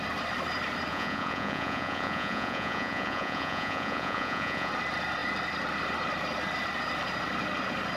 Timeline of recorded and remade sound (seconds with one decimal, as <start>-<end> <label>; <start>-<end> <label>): 0.0-0.9 recorded; 0.9-4.7 remade; 4.7-8.0 recorded